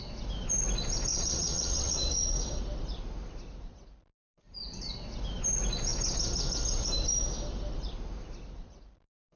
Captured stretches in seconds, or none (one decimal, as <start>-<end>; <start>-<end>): 0.0-1.1; 2.6-9.4